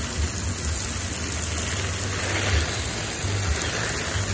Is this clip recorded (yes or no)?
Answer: yes